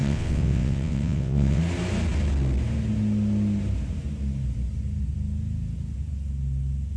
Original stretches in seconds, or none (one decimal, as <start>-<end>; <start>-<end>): 1.6-7.0